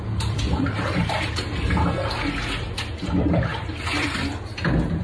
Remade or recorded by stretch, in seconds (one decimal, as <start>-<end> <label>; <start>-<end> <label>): 0.0-0.5 recorded; 0.5-1.7 remade; 1.7-3.5 recorded; 3.5-4.3 remade; 4.3-5.0 recorded